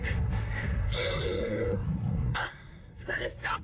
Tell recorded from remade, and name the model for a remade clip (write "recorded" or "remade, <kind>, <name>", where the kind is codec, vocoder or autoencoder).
remade, codec, SNAC